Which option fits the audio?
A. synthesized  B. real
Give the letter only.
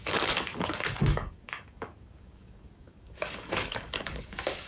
A